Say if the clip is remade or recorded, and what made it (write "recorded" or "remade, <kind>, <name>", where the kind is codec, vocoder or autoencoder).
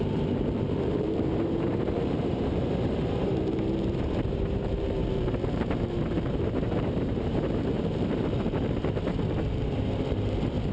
remade, vocoder, BigVGAN v2